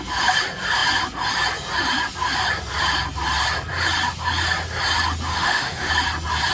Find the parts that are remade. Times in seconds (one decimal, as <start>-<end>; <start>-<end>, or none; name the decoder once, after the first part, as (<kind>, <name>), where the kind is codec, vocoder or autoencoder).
5.3-5.9 (autoencoder, DAC-VAE)